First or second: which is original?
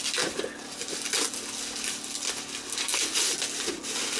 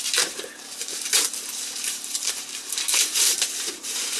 first